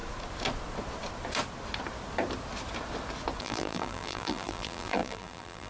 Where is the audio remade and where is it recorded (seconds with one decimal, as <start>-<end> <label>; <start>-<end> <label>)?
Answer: 0.0-3.4 recorded; 3.4-5.7 remade